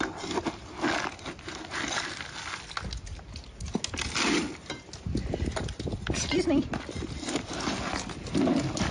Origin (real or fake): real